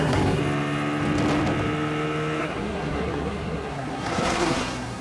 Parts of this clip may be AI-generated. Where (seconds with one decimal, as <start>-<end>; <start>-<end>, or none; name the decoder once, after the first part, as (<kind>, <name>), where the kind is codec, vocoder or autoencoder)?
0.0-0.4 (codec, SNAC); 2.4-5.0